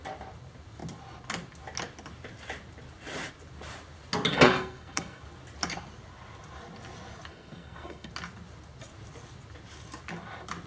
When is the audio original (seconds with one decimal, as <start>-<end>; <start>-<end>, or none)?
0.0-4.3; 5.2-7.3; 8.1-10.7